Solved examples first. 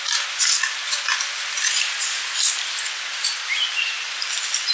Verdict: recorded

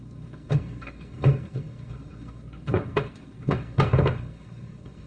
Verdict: remade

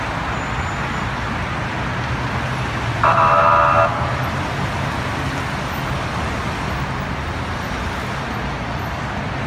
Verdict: recorded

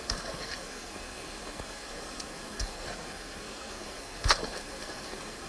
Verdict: remade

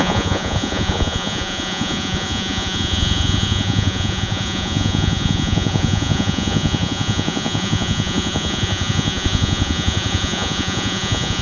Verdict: remade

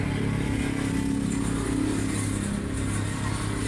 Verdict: recorded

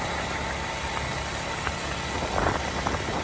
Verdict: recorded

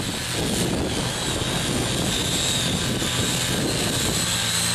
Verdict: recorded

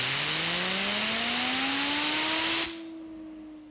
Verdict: recorded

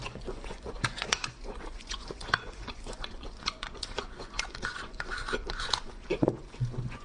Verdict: remade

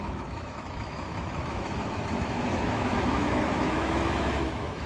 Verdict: remade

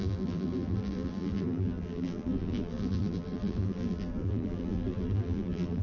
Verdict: remade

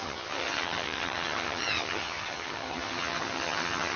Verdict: remade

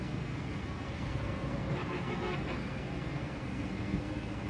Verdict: remade